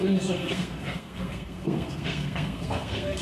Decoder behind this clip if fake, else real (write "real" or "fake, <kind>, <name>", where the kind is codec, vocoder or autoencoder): fake, codec, SNAC